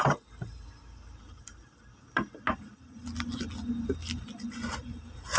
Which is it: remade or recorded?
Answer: recorded